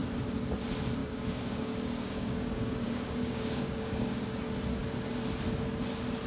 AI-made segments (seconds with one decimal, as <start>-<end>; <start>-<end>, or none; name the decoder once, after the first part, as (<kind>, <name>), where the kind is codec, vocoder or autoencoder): 1.0-4.3 (codec, DAC)